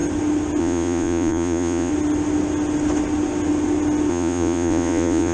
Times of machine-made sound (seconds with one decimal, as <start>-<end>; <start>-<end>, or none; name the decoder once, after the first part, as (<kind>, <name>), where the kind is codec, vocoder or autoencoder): 0.6-1.9 (vocoder, Vocos); 4.1-5.3